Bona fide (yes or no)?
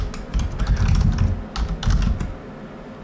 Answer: yes